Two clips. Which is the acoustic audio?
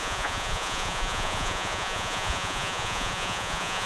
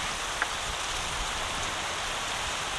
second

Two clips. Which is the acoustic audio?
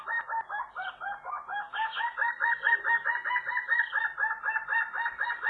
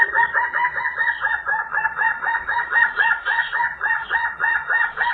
first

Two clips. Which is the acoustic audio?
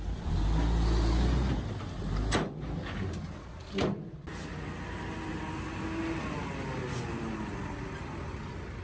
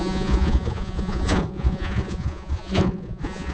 first